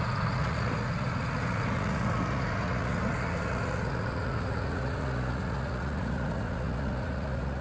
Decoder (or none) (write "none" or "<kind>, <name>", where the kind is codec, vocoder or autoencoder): vocoder, Vocos